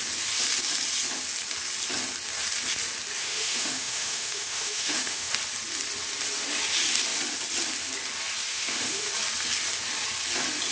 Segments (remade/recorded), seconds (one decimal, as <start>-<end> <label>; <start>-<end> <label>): 0.0-3.2 recorded; 3.2-5.3 remade; 5.3-8.5 recorded; 8.5-9.1 remade; 9.1-10.7 recorded